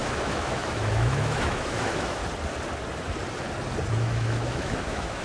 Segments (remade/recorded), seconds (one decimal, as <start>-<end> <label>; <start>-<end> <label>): 0.0-2.2 remade; 2.2-3.9 recorded; 3.9-5.2 remade